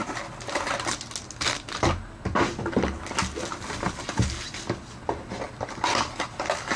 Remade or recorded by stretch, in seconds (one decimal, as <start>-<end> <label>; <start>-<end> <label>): 0.0-6.8 recorded